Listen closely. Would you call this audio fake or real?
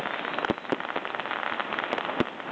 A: real